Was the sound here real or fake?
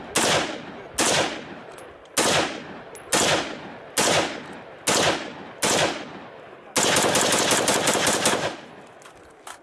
real